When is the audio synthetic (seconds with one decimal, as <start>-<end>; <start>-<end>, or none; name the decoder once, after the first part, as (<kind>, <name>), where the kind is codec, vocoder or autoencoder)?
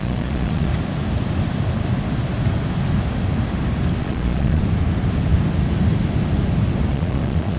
0.0-0.7 (vocoder, Vocos); 4.0-4.6; 6.9-7.6